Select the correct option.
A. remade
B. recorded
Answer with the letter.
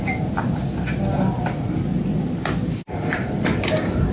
B